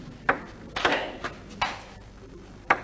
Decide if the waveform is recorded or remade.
recorded